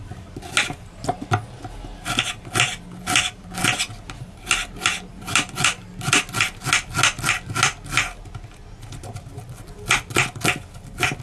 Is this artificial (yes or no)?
no